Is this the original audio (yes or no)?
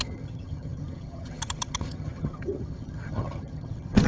no